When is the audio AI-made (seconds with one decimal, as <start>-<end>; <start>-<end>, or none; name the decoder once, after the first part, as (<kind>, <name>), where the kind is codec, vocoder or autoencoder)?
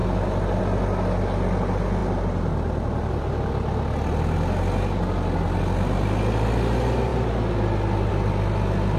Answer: none